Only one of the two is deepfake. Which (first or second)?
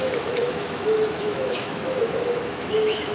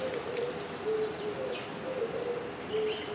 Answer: first